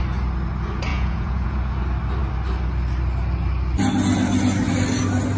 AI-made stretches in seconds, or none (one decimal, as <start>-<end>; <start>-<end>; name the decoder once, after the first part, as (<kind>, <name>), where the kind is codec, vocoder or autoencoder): 0.9-1.7 (vocoder, Vocos)